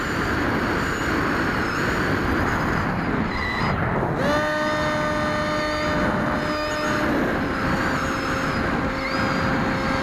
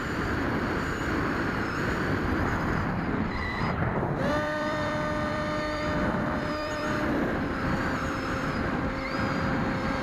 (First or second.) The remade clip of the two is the second